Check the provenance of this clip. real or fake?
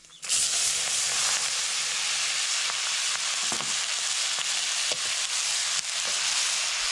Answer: real